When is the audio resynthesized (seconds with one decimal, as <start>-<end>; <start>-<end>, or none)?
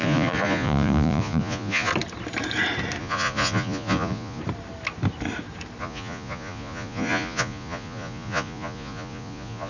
0.0-1.9; 3.0-4.4; 5.8-9.7